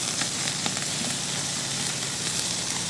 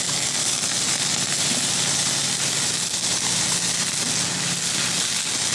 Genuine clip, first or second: second